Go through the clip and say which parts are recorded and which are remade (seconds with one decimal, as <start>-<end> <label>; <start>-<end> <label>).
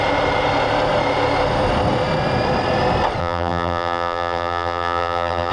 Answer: 0.0-3.2 recorded; 3.2-5.5 remade